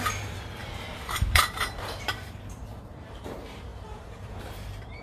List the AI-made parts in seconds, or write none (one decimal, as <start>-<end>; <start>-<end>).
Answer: 0.0-5.0